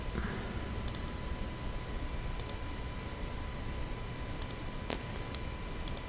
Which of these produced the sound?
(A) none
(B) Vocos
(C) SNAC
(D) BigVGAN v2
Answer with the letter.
A